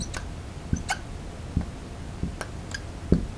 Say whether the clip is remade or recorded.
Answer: recorded